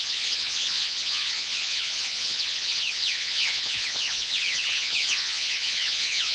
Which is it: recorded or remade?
remade